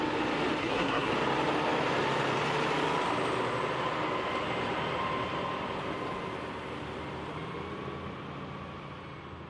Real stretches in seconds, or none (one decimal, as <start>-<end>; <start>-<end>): 0.0-0.6; 1.1-9.5